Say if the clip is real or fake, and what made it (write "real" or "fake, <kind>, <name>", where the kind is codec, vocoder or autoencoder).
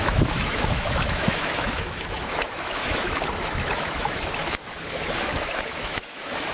fake, autoencoder, DAC-VAE